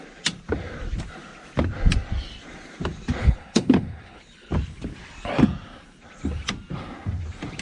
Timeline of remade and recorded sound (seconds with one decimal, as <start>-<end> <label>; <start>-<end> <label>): 0.0-3.2 recorded; 3.2-4.5 remade; 4.5-7.6 recorded